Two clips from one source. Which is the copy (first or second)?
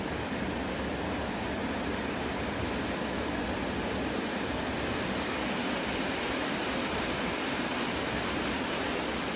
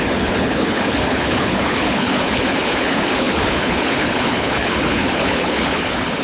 second